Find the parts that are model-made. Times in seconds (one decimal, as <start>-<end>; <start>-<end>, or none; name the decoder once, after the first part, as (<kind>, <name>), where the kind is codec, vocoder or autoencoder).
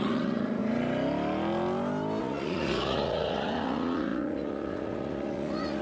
0.0-0.6 (vocoder, Vocos); 2.2-5.8